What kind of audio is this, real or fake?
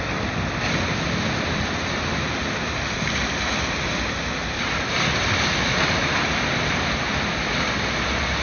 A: fake